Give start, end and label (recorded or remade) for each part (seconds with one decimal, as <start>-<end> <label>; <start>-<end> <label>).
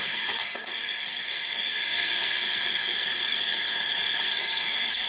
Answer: 0.0-5.1 remade